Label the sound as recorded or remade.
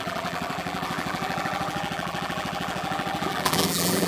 remade